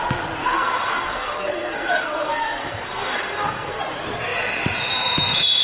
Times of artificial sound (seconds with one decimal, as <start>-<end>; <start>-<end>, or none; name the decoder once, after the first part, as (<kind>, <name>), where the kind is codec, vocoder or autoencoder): 0.4-3.8 (codec, SNAC)